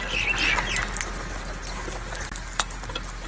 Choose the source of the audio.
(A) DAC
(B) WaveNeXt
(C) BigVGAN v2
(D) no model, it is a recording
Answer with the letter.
D